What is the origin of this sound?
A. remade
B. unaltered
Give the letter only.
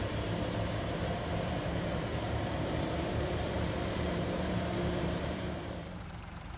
A